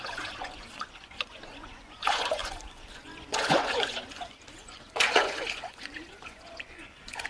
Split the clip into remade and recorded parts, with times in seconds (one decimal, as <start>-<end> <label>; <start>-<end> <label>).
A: 0.0-7.3 remade